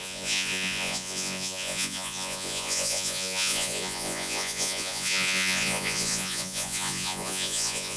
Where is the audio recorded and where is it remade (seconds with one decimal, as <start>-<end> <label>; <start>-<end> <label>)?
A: 0.0-8.0 remade